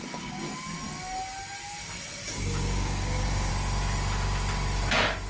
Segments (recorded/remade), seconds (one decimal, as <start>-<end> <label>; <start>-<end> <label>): 0.0-2.2 recorded; 2.2-3.5 remade; 3.5-5.3 recorded

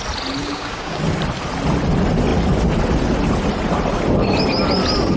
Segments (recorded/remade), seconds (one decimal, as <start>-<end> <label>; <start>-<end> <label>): 0.0-0.4 recorded; 0.4-1.0 remade; 1.0-5.2 recorded

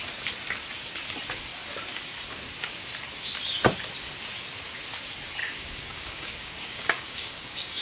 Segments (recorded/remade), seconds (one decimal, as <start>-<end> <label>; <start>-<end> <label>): 0.0-5.4 recorded; 5.4-7.8 remade

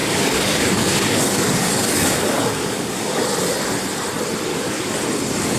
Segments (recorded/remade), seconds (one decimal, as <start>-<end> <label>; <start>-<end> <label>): 0.0-3.2 remade; 3.2-4.5 recorded; 4.5-5.0 remade; 5.0-5.6 recorded

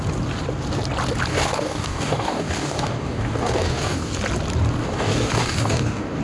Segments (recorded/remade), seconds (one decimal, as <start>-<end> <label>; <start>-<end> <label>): 0.0-1.3 recorded; 1.3-4.1 remade; 4.1-4.8 recorded; 4.8-6.2 remade

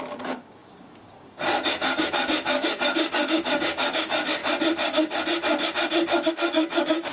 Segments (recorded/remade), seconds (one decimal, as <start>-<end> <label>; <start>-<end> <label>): 0.0-4.4 remade; 4.4-6.3 recorded; 6.3-7.1 remade

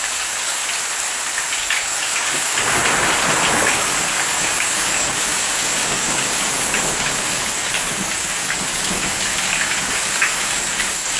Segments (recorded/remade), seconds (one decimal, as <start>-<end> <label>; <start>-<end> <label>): 0.0-0.6 remade; 0.6-1.6 recorded; 1.6-2.8 remade; 2.8-3.5 recorded; 3.5-11.2 remade

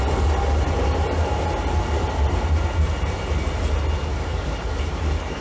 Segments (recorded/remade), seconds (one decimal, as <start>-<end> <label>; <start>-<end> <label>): 0.0-4.1 recorded; 4.1-5.4 remade